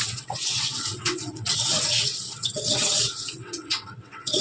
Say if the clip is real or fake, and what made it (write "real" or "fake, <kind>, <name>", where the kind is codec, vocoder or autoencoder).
fake, vocoder, WaveNeXt